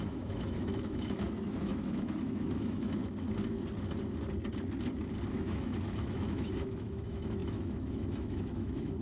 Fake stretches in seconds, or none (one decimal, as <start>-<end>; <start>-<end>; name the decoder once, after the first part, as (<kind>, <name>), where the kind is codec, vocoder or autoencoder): 0.0-3.0 (autoencoder, DAC-VAE); 5.3-9.0